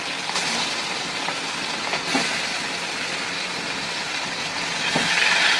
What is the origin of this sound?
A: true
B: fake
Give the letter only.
A